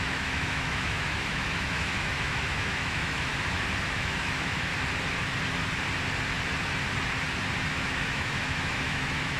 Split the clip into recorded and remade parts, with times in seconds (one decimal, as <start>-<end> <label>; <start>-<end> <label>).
0.0-3.3 remade; 3.3-3.9 recorded; 3.9-4.7 remade; 4.7-7.7 recorded; 7.7-9.4 remade